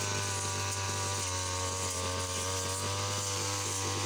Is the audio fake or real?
real